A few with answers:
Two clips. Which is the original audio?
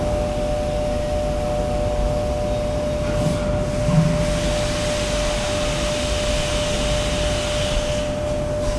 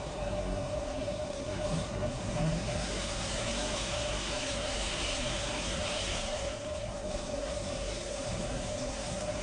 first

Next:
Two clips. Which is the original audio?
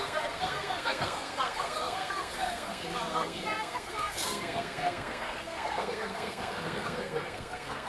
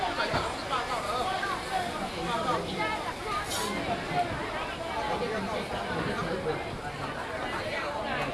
second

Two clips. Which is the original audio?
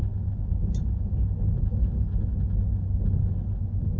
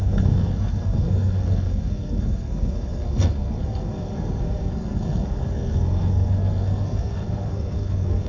first